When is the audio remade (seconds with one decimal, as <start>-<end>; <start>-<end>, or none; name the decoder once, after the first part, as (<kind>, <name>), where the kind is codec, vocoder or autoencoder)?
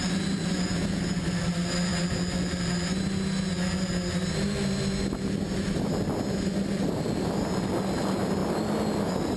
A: none